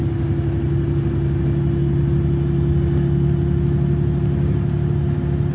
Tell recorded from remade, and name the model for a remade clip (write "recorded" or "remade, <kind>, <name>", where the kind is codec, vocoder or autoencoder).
recorded